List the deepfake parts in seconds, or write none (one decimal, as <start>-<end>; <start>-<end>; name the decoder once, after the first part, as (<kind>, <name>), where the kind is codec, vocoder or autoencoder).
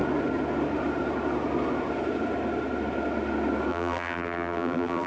3.7-5.1 (vocoder, BigVGAN v2)